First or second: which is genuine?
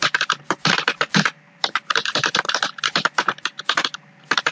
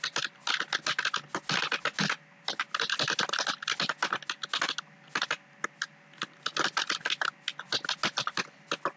second